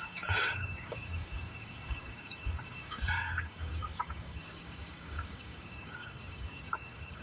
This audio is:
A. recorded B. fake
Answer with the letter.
B